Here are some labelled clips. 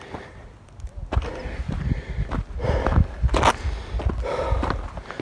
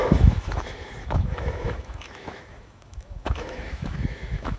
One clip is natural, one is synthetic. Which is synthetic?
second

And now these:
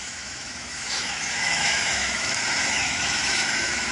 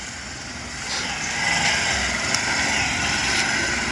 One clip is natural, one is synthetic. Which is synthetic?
first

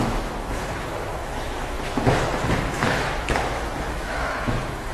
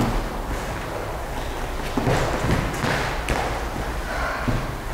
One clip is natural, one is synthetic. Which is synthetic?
first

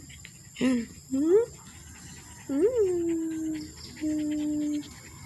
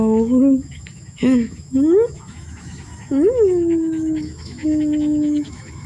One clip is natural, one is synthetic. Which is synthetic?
second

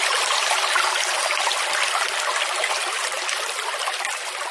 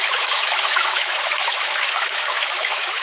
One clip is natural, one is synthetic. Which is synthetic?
second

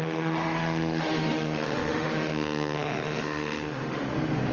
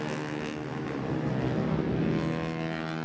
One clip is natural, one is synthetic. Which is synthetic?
first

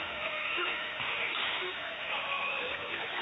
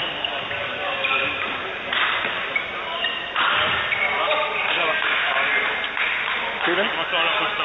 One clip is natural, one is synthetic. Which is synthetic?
first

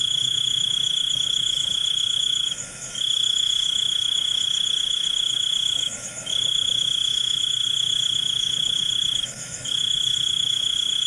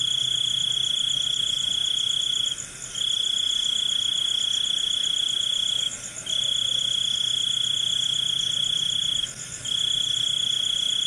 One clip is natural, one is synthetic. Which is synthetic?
first